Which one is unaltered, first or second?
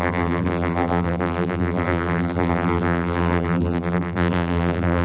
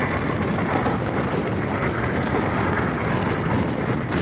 second